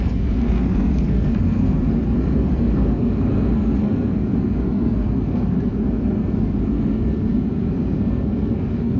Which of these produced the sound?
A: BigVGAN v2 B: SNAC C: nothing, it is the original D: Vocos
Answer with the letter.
B